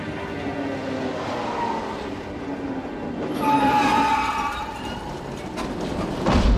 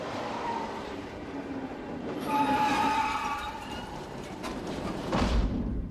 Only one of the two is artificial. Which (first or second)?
second